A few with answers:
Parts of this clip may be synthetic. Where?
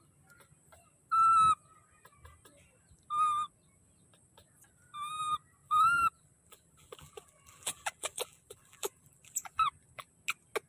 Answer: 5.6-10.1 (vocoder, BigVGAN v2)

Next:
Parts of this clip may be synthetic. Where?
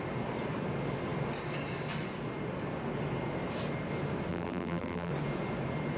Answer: 4.3-5.1 (vocoder, BigVGAN v2)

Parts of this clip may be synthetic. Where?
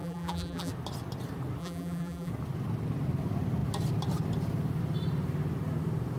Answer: 0.0-0.7 (vocoder, BigVGAN v2); 1.6-2.3